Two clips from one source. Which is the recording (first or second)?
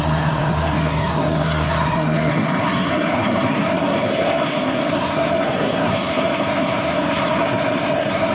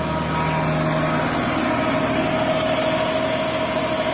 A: second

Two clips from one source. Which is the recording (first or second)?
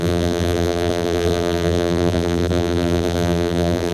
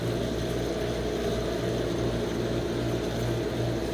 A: second